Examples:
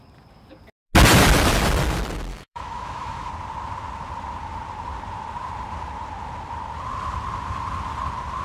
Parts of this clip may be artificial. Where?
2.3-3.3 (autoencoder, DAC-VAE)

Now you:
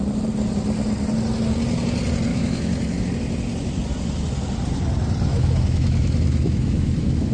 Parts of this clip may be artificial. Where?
2.3-3.0 (autoencoder, DAC-VAE); 5.3-7.3

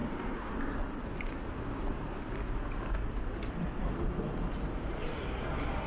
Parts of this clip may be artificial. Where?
0.0-0.5 (autoencoder, DAC-VAE)

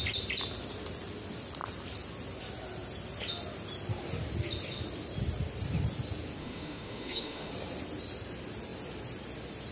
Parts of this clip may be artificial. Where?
6.4-7.5 (autoencoder, DAC-VAE)

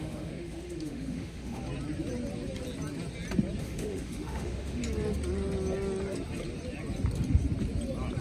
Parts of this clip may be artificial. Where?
0.0-1.6 (autoencoder, DAC-VAE); 3.6-4.8

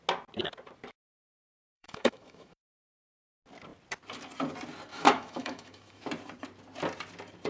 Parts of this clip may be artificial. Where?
1.6-3.2 (autoencoder, DAC-VAE); 4.9-6.0

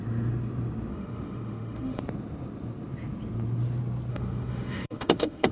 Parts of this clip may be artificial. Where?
0.9-2.0 (autoencoder, DAC-VAE); 4.1-5.5

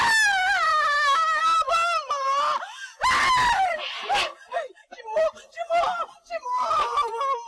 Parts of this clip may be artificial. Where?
0.7-1.4 (autoencoder, DAC-VAE)